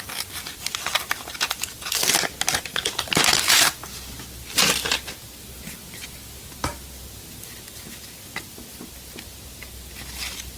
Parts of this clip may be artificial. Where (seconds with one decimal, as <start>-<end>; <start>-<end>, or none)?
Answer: 2.7-3.4